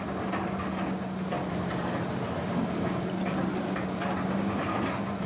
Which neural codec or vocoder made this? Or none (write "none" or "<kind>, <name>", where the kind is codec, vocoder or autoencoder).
none